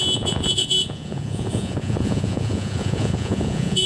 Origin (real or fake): fake